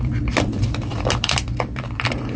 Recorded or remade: remade